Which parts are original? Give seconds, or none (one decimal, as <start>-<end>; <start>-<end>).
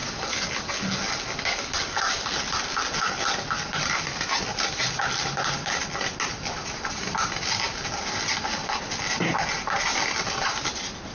0.0-11.1